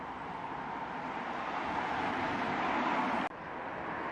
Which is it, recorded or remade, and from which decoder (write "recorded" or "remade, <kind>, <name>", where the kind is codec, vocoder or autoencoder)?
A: recorded